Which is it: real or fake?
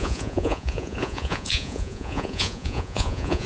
fake